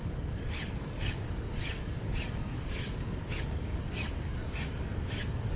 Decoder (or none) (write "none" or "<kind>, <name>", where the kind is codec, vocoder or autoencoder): codec, DAC